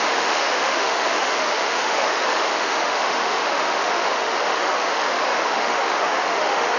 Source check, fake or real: fake